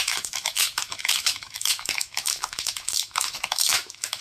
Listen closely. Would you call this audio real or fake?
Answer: fake